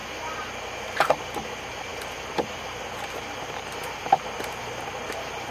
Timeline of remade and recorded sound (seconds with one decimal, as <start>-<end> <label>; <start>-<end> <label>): 0.0-0.5 remade; 0.5-5.5 recorded